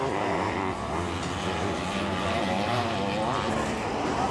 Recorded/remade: recorded